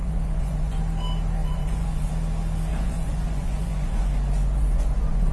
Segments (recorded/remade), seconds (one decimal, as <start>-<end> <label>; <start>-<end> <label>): 0.0-0.8 remade; 0.8-1.4 recorded; 1.4-2.1 remade; 2.1-2.7 recorded; 2.7-5.3 remade